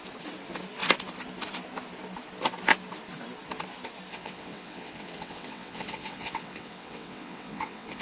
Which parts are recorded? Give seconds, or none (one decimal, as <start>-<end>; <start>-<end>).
0.0-4.1

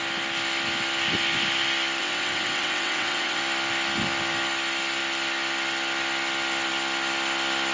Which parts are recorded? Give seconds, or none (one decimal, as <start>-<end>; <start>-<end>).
0.0-2.0; 3.4-7.7